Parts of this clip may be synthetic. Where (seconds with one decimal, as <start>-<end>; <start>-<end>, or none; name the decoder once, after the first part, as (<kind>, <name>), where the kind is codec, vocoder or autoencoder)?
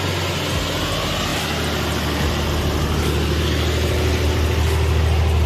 none